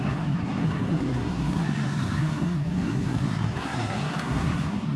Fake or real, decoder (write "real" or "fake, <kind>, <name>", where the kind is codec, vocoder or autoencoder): fake, codec, SNAC